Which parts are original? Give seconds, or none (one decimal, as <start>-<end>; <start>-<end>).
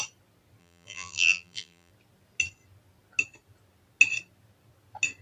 0.0-0.6; 1.9-5.2